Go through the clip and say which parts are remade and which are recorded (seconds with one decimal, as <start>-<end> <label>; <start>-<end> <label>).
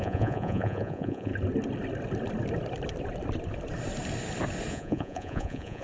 0.0-1.3 remade; 1.3-4.7 recorded; 4.7-5.8 remade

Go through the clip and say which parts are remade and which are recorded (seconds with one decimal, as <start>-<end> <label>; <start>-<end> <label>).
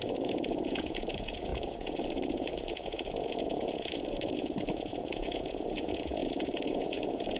0.0-7.4 remade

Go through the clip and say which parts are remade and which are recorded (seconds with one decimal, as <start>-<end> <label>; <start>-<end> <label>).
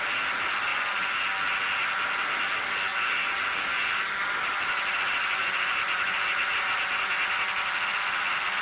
0.0-0.7 recorded; 0.7-1.2 remade; 1.2-2.9 recorded; 2.9-4.0 remade; 4.0-5.4 recorded; 5.4-6.4 remade; 6.4-8.6 recorded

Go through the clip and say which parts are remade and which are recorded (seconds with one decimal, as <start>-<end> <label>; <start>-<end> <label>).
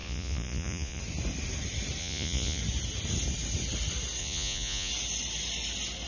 0.0-1.0 remade; 1.0-2.0 recorded; 2.0-2.6 remade; 2.6-4.2 recorded; 4.2-4.9 remade; 4.9-6.1 recorded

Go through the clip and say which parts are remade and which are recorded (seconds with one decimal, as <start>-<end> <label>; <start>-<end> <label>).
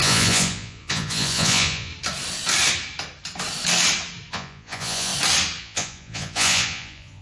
0.0-1.9 remade; 1.9-4.3 recorded; 4.3-5.1 remade; 5.1-5.6 recorded; 5.6-7.2 remade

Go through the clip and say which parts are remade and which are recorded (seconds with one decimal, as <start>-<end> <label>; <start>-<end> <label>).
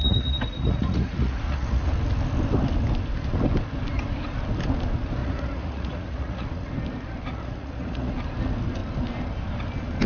0.0-1.9 remade; 1.9-5.2 recorded; 5.2-6.7 remade; 6.7-7.3 recorded; 7.3-8.1 remade; 8.1-10.1 recorded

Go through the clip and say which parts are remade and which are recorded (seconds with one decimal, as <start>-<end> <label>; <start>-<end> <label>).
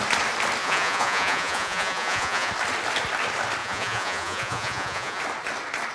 0.0-0.6 recorded; 0.6-2.5 remade; 2.5-3.6 recorded; 3.6-5.2 remade; 5.2-5.9 recorded